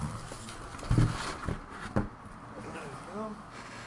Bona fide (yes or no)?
yes